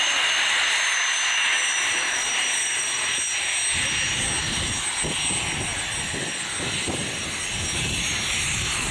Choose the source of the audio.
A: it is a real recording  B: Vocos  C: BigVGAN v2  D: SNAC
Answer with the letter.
A